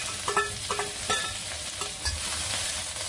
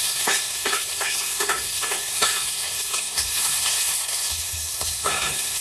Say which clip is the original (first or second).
first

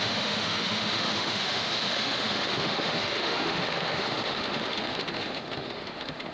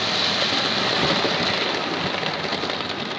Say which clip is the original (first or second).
second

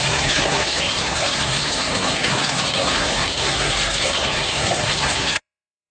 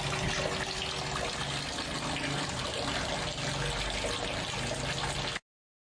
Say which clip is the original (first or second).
second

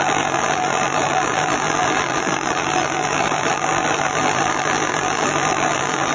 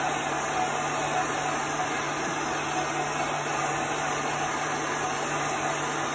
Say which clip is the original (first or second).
second